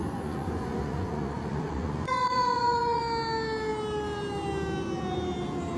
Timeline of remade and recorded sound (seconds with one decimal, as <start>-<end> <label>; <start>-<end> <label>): 0.0-3.0 remade; 3.0-5.8 recorded